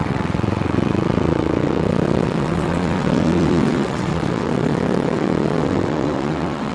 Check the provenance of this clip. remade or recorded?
remade